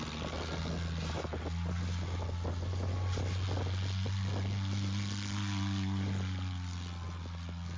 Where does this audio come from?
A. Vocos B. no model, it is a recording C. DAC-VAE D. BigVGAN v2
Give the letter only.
B